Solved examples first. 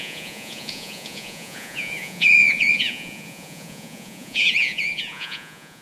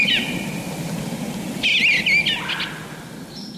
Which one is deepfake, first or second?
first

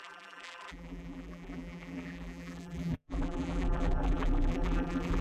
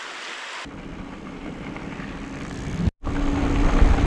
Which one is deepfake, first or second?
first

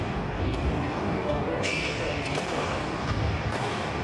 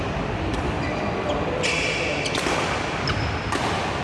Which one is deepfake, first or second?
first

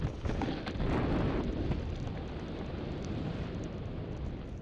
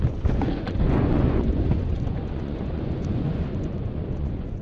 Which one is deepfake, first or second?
second